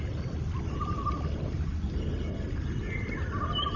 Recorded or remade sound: remade